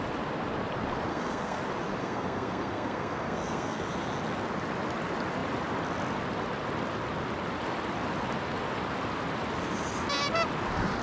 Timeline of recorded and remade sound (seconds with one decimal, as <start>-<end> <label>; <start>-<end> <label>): 0.0-1.1 recorded; 1.1-1.6 remade; 1.6-2.0 recorded; 2.0-3.8 remade; 3.8-11.0 recorded